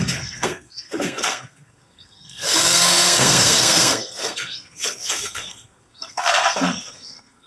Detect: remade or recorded remade